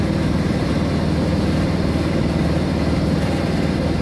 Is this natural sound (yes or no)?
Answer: no